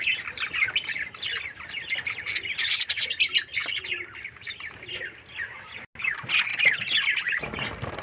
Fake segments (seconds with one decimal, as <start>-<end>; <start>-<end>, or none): none